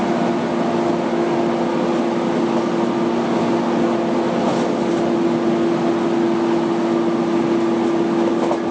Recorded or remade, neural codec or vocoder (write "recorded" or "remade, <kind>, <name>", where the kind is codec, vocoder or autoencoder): recorded